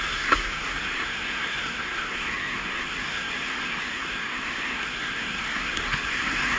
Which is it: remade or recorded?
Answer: remade